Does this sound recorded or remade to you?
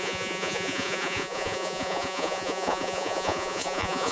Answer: remade